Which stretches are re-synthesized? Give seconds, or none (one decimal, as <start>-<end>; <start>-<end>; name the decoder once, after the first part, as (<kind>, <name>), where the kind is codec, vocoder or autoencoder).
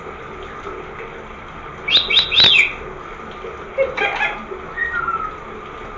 none